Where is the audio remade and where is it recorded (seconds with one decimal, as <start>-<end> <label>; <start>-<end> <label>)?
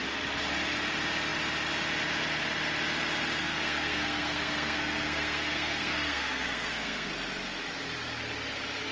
0.0-3.4 recorded; 3.4-7.1 remade; 7.1-8.9 recorded